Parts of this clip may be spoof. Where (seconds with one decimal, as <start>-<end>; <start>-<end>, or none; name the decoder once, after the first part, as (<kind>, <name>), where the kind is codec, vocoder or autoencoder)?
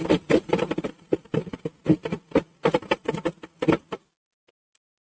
none